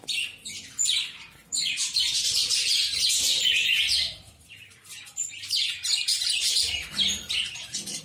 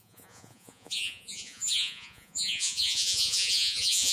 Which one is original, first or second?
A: first